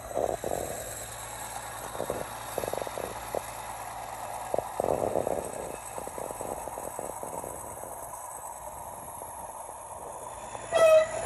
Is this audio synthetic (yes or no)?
no